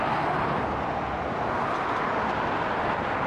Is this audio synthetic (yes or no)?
no